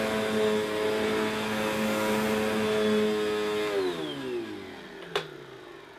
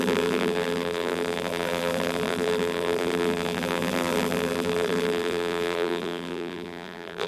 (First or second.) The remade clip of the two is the second